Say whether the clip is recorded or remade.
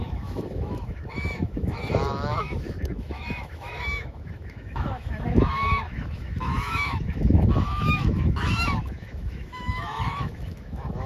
remade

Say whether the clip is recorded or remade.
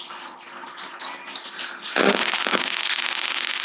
recorded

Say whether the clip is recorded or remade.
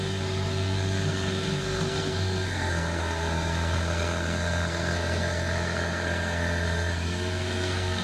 remade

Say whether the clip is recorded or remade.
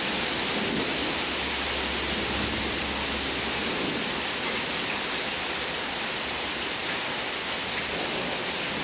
recorded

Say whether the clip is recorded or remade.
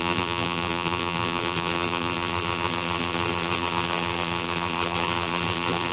remade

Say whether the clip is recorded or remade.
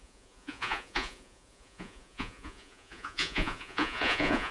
remade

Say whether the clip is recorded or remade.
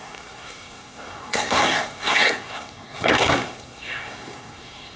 remade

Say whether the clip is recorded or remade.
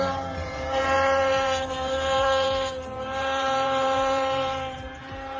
remade